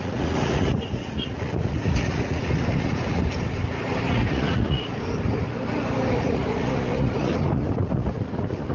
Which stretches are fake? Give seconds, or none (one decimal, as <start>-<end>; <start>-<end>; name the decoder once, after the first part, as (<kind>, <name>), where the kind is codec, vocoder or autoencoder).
0.0-3.2 (vocoder, Vocos); 4.1-4.9; 6.2-8.7